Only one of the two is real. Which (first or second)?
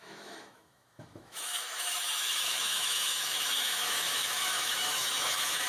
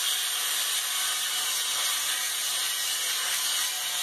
second